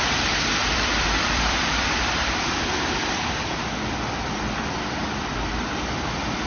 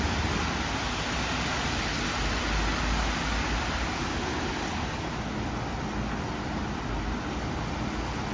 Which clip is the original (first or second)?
second